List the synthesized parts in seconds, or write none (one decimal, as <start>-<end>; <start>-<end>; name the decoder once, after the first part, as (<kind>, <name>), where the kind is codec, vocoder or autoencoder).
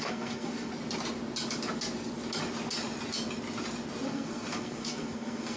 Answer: 0.0-0.7 (codec, SNAC); 4.1-5.6